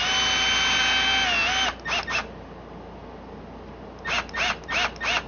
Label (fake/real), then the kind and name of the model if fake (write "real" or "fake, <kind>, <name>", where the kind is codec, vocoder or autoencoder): real